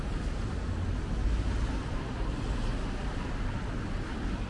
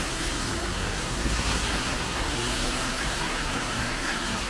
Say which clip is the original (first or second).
first